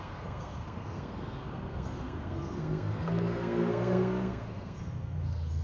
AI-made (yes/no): yes